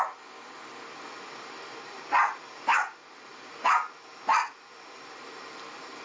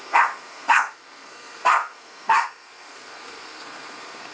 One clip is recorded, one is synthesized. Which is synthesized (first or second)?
second